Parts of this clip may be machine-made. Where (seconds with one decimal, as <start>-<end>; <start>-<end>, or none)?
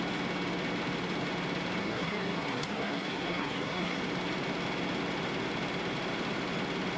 1.8-4.0